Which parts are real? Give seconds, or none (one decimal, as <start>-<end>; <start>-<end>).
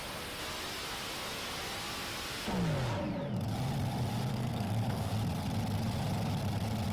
0.0-4.3; 5.1-6.9